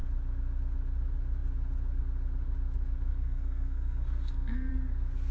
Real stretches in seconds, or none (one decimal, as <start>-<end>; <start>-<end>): 0.0-3.1; 4.7-5.3